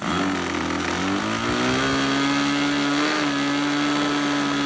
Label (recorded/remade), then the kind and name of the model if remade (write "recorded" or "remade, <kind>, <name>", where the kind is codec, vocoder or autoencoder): recorded